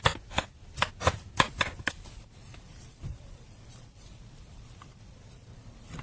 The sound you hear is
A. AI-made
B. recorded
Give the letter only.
A